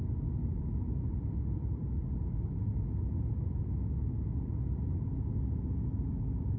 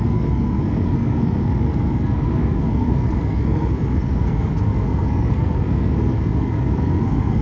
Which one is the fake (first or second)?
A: second